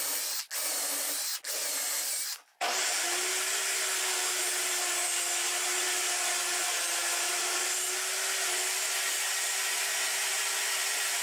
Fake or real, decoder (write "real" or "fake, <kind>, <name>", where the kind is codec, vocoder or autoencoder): real